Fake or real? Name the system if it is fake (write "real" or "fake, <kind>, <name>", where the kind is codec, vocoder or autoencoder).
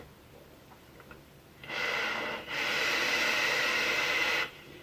fake, vocoder, BigVGAN v2